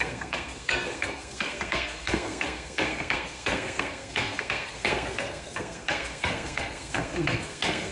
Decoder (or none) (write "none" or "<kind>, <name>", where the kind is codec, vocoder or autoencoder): codec, SNAC